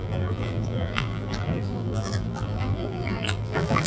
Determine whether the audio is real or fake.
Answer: fake